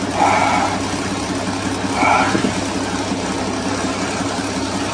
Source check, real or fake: real